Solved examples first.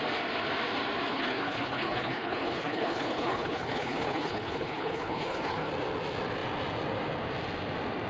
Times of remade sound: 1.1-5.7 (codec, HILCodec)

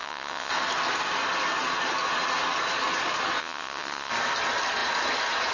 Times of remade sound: 0.0-0.5 (vocoder, WaveNeXt); 3.4-4.1

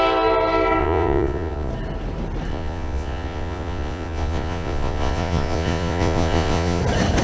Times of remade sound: 0.8-1.7 (vocoder, Vocos); 2.5-6.8

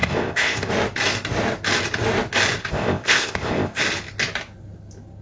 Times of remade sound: 0.0-0.7 (codec, ZipCodec); 2.6-3.8

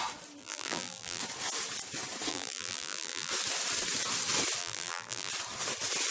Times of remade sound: 0.4-1.2 (vocoder, BigVGAN v2); 2.3-3.3; 4.6-5.3

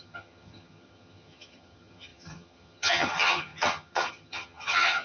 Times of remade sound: 0.0-5.0 (vocoder, HiFi-GAN)